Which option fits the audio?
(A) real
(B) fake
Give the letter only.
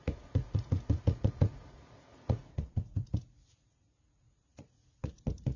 B